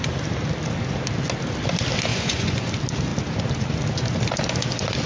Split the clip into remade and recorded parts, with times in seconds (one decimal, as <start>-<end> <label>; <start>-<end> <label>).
0.0-2.1 recorded; 2.1-2.7 remade; 2.7-5.1 recorded

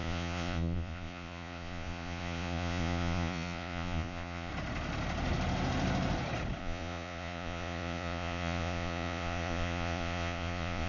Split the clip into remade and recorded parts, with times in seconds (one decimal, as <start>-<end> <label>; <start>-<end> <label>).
0.0-4.5 remade; 4.5-6.6 recorded; 6.6-10.9 remade

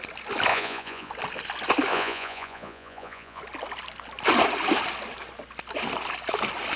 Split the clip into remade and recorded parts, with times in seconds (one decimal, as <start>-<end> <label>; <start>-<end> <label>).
0.0-0.5 recorded; 0.5-1.1 remade; 1.1-1.9 recorded; 1.9-3.4 remade; 3.4-6.8 recorded

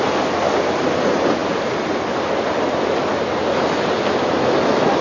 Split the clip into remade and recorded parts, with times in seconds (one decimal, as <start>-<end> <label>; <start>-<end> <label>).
0.0-5.0 recorded

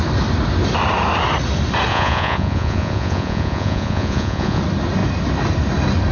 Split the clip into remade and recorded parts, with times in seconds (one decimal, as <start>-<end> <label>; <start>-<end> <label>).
0.0-1.9 recorded; 1.9-4.6 remade; 4.6-6.1 recorded

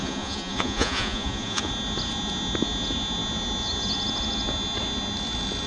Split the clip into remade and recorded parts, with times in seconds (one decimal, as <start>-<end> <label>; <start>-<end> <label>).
0.0-1.7 remade; 1.7-5.7 recorded

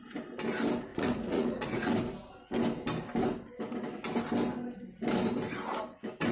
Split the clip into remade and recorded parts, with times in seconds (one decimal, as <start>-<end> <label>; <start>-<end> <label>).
0.0-0.9 recorded; 0.9-1.9 remade; 1.9-6.3 recorded